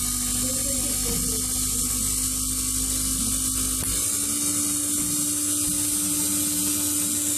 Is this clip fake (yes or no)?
no